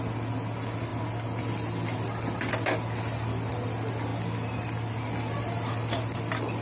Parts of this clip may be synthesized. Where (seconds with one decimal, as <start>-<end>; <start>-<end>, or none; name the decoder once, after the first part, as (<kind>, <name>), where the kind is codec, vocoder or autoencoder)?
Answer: 0.0-0.9 (vocoder, BigVGAN v2); 3.5-4.1; 5.4-6.6